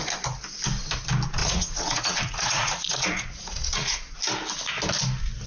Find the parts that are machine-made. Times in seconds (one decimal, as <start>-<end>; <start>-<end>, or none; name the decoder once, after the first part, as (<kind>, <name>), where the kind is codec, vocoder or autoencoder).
1.4-4.2 (vocoder, Vocos)